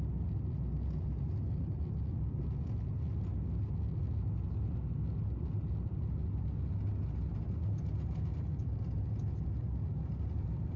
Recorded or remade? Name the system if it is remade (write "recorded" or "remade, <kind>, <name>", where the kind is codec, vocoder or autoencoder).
recorded